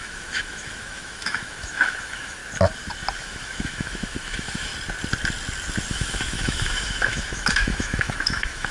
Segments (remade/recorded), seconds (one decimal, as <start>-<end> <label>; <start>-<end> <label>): 0.0-2.4 remade; 2.4-3.2 recorded; 3.2-4.7 remade; 4.7-5.9 recorded; 5.9-8.7 remade